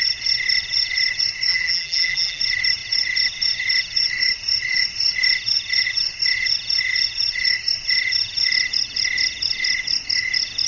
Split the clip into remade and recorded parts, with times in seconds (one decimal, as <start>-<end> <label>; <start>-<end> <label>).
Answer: 0.0-1.5 recorded; 1.5-2.4 remade; 2.4-10.7 recorded